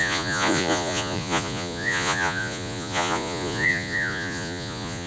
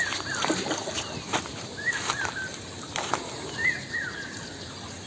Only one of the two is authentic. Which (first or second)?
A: second